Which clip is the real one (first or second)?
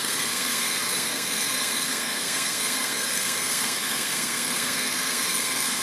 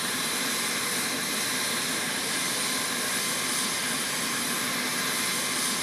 second